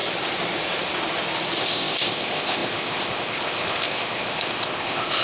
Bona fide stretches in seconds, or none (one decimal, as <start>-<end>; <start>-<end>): 0.0-1.6